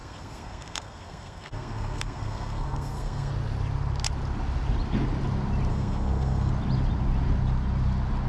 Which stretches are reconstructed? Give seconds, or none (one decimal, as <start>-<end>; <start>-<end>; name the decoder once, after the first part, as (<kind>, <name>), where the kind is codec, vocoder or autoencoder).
0.0-3.3 (codec, SNAC); 5.7-6.5